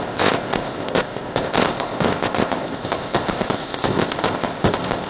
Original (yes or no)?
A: no